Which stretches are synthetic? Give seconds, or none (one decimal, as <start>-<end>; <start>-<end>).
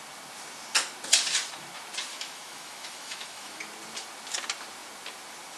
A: 2.1-3.6